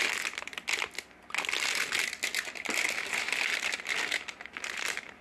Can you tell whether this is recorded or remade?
recorded